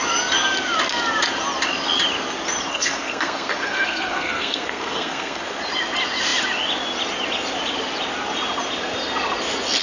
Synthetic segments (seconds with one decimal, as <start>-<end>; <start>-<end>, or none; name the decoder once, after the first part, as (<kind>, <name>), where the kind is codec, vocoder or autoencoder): 2.7-5.6 (codec, SNAC)